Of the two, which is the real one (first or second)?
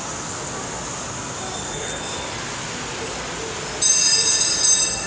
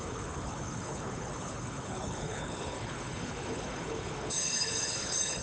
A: first